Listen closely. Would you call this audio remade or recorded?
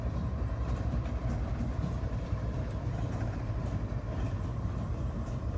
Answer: remade